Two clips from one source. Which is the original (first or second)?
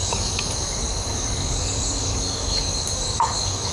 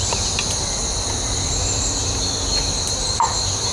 second